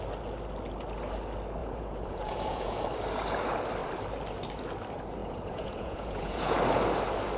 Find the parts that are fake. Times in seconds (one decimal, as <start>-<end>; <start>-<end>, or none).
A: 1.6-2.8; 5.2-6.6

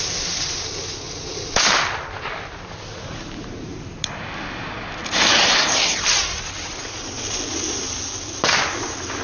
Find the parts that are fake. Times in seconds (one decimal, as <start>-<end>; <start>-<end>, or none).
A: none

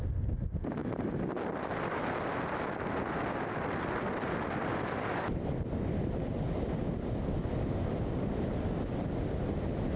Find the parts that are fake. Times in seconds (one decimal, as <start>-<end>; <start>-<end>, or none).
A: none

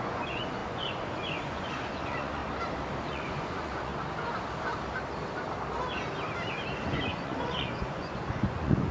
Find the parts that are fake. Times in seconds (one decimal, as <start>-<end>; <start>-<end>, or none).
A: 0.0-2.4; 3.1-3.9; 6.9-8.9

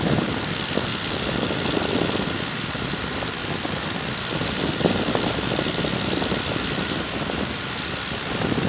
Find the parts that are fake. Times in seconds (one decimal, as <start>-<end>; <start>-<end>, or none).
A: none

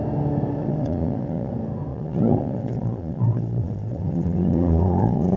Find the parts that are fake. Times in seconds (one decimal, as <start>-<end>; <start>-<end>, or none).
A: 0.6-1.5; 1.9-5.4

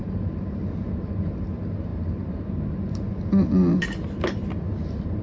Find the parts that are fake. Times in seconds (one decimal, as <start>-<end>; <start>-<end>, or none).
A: none

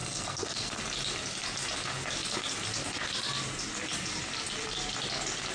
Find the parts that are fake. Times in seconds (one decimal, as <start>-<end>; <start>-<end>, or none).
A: 0.0-0.8